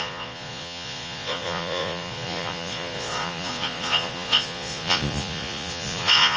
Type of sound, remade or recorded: remade